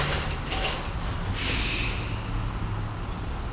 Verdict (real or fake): real